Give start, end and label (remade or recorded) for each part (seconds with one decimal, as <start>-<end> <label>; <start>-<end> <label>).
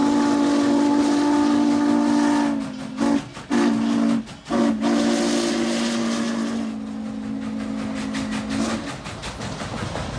0.0-10.2 recorded